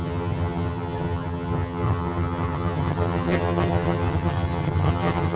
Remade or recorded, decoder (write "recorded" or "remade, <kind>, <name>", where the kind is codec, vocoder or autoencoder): remade, vocoder, HiFi-GAN